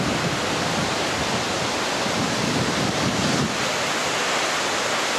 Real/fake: real